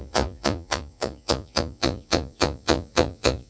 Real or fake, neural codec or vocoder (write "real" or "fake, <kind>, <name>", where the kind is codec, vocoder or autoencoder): fake, vocoder, Vocos